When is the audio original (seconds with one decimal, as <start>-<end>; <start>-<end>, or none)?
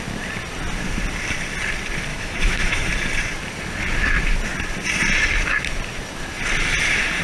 0.0-2.1; 2.9-7.2